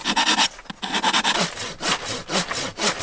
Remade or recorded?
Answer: recorded